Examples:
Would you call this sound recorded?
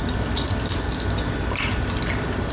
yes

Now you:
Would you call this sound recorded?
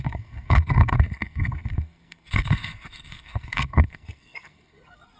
no